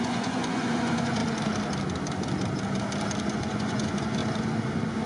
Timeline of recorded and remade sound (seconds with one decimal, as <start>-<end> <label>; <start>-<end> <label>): 0.0-1.2 remade; 1.2-3.3 recorded; 3.3-4.2 remade; 4.2-5.1 recorded